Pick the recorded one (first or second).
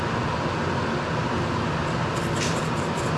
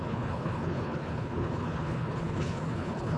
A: first